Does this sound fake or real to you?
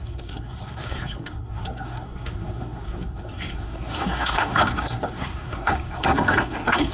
fake